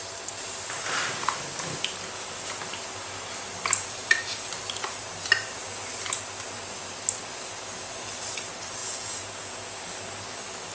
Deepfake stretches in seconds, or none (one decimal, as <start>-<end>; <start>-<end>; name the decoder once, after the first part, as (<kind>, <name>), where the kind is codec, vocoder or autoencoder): 8.8-9.8 (vocoder, Vocos)